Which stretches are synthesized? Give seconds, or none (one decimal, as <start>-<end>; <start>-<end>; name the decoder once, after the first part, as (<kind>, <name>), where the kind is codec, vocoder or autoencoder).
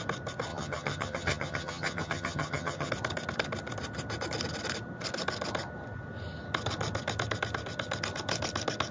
0.5-2.9 (vocoder, HiFi-GAN)